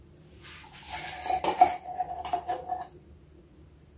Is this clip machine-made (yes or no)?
no